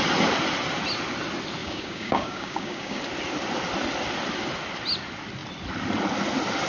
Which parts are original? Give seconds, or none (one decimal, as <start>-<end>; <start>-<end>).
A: 0.0-1.6; 3.0-6.7